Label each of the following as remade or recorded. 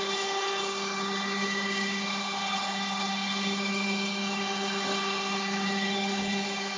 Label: remade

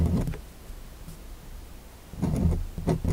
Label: recorded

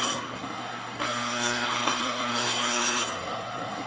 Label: remade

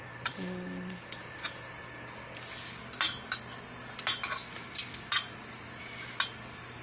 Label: recorded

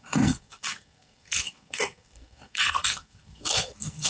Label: remade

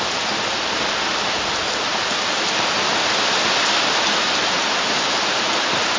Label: recorded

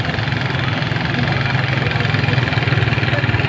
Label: recorded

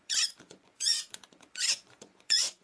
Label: remade